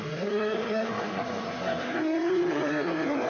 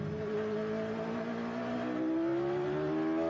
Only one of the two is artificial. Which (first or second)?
first